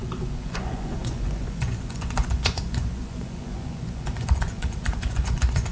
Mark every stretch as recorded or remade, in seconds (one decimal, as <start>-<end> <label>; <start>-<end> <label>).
0.0-5.7 remade